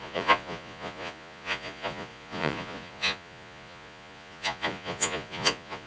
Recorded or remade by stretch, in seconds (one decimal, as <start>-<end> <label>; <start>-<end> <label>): 0.0-5.9 remade